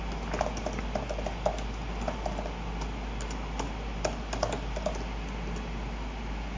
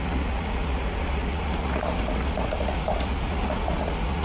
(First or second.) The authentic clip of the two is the first